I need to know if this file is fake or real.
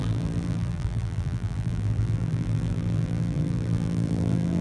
fake